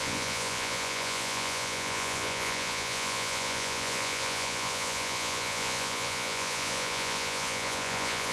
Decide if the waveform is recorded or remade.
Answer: remade